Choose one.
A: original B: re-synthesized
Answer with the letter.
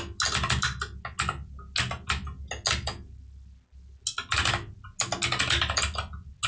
A